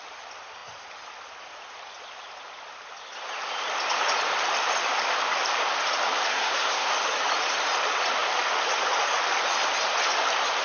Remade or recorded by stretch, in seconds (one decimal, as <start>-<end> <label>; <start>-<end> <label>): 0.0-6.3 recorded; 6.3-6.9 remade; 6.9-10.6 recorded